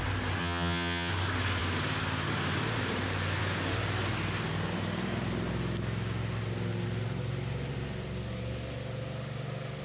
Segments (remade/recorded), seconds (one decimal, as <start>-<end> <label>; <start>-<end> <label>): 0.0-0.4 recorded; 0.4-1.1 remade; 1.1-9.8 recorded